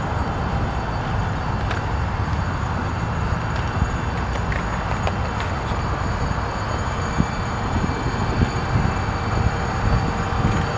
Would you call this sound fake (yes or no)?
no